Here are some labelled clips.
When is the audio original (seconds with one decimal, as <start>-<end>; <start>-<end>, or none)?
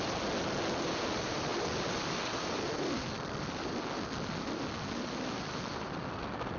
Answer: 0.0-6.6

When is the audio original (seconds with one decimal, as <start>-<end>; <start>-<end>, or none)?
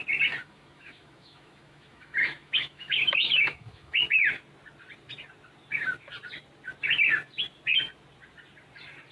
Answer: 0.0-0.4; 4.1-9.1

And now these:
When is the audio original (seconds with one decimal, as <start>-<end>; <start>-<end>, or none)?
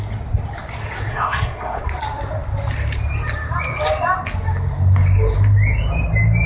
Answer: 0.0-1.1; 1.8-6.5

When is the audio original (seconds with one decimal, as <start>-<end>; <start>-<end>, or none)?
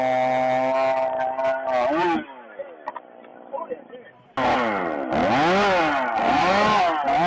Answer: 0.0-6.2; 6.8-7.3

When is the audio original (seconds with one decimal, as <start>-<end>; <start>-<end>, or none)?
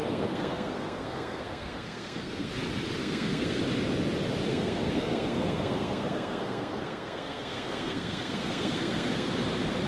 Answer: 2.5-3.0; 3.6-4.5; 9.3-9.9